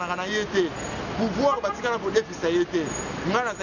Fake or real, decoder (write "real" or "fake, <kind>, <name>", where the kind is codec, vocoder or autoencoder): real